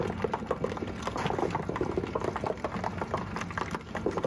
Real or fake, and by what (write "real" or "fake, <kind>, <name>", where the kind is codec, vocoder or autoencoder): real